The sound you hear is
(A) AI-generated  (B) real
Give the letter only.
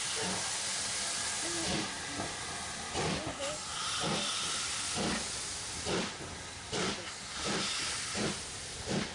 B